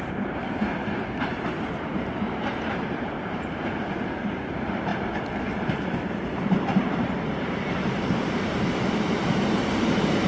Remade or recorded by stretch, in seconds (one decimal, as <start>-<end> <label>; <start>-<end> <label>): 0.0-10.3 remade